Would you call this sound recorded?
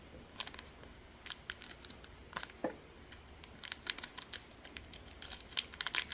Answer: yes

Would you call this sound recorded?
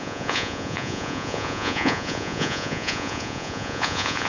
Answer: no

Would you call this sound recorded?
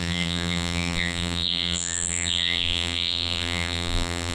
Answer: no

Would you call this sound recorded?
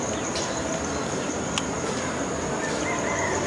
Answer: yes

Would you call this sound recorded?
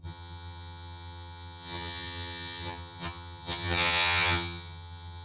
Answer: no